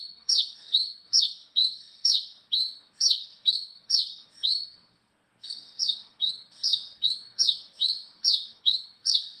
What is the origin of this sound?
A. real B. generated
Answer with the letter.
B